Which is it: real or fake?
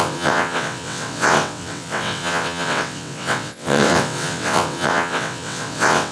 fake